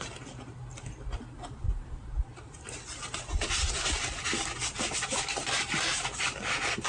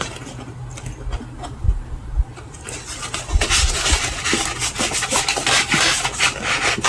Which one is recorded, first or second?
second